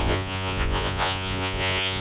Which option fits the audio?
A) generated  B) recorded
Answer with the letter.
A